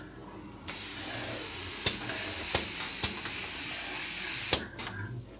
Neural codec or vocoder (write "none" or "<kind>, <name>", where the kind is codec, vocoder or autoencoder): none